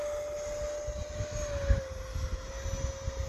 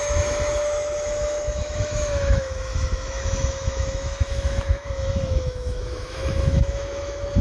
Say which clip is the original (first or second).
first